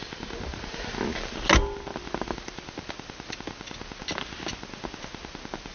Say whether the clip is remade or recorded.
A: recorded